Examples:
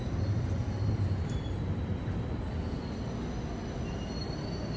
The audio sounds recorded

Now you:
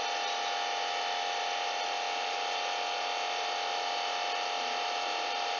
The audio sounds recorded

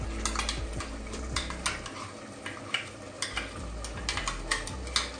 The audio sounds recorded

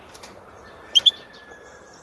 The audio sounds remade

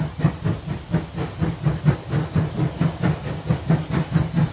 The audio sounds recorded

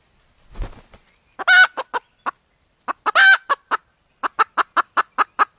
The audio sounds recorded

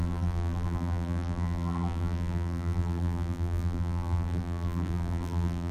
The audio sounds remade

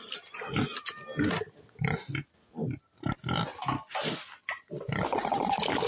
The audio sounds recorded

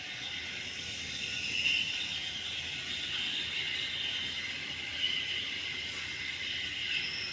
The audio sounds recorded